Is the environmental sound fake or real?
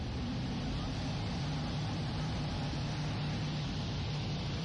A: fake